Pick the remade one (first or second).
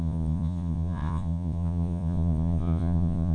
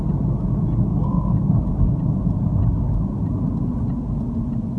first